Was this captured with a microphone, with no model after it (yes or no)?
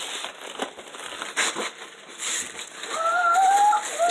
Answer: yes